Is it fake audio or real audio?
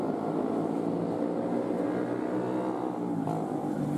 real